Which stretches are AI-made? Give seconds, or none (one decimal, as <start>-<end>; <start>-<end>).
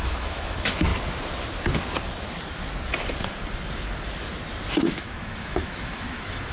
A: 0.0-0.9; 4.8-6.5